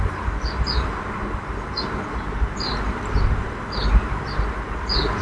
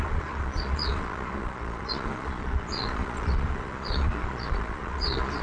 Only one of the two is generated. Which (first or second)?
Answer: second